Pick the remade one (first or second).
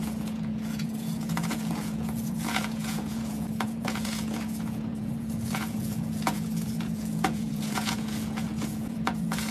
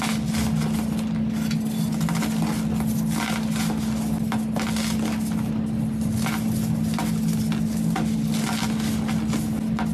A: first